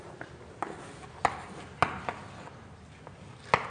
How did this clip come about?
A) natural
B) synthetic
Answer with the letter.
A